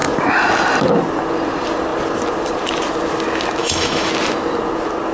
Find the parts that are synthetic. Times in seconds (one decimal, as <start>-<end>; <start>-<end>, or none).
3.6-4.1